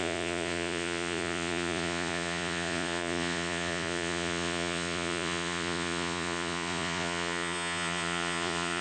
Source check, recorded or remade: remade